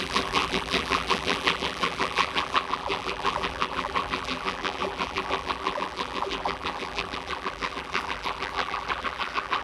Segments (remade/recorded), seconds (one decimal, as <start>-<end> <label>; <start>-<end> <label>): 0.0-9.6 remade